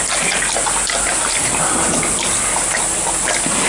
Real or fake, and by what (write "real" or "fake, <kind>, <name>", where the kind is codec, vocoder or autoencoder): real